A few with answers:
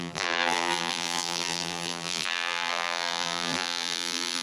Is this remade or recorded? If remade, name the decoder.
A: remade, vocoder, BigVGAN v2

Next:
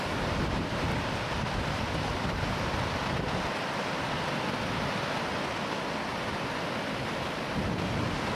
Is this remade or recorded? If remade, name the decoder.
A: recorded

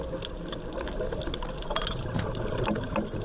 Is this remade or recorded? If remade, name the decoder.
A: recorded